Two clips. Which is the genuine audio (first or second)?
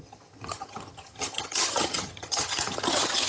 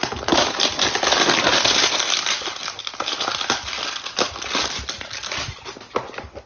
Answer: second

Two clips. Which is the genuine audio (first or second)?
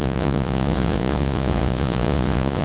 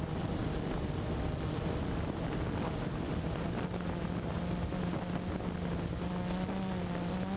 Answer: second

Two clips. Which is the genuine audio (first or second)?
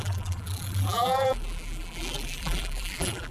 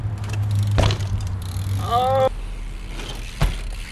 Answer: second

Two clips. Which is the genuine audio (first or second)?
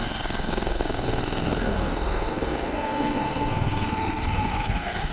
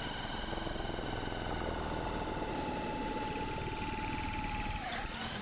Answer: second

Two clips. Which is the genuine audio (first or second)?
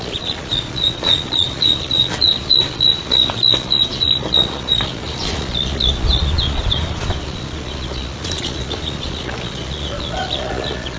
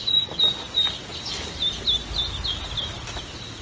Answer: second